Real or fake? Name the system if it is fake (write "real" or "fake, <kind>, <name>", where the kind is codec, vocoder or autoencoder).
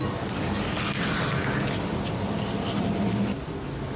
real